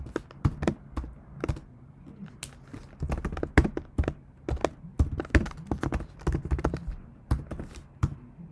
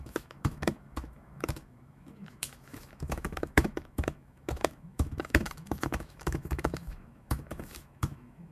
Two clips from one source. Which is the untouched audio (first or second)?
first